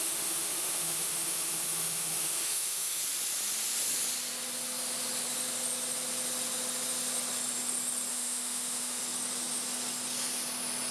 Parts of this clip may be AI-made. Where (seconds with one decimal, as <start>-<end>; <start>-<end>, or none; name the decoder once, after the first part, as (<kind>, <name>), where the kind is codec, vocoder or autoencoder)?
0.0-3.0 (autoencoder, DAC-VAE); 8.1-9.0